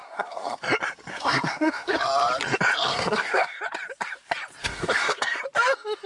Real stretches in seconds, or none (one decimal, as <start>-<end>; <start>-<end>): 0.6-1.1; 2.0-2.9; 3.6-4.6; 5.4-6.1